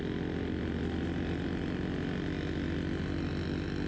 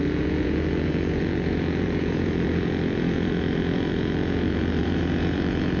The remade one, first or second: second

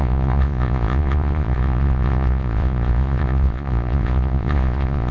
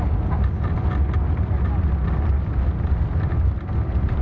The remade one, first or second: first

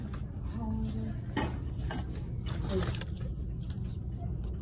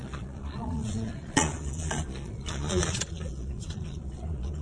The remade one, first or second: second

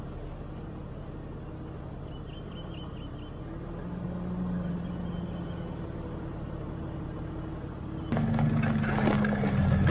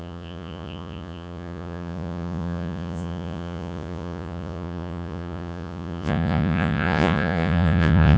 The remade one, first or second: second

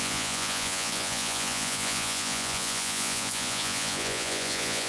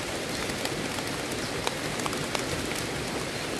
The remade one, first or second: first